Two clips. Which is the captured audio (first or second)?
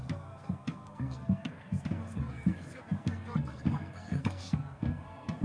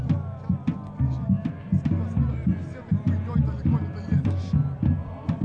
second